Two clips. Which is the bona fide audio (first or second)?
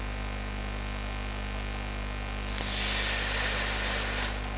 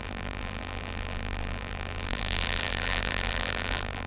first